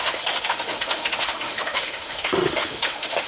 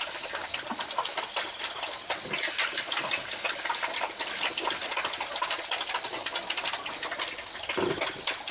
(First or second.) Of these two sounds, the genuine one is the second